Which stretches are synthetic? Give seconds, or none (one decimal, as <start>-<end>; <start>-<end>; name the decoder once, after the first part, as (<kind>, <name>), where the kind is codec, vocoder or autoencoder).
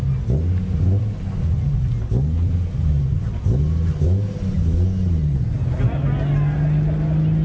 none